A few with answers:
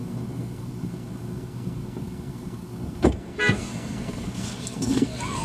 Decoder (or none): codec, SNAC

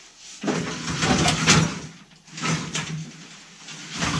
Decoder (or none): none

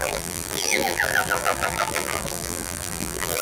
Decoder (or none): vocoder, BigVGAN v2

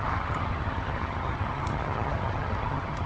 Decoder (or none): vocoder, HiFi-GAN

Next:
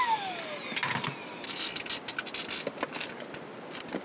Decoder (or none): none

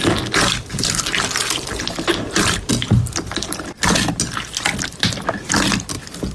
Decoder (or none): none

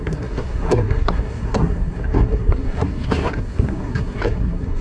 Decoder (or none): codec, SNAC